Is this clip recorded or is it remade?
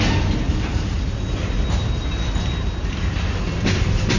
recorded